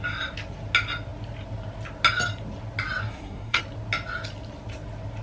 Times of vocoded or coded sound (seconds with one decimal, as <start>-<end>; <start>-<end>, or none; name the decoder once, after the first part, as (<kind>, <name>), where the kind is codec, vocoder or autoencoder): 3.0-3.6 (codec, SNAC)